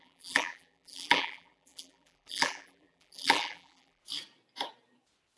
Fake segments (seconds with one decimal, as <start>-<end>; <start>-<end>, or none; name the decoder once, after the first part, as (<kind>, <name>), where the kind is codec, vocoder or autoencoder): 0.0-4.0 (vocoder, BigVGAN v2)